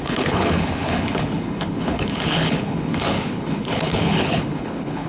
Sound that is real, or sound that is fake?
fake